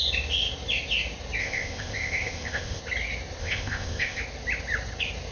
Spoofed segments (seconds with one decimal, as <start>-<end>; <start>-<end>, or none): 1.4-2.8; 3.4-4.2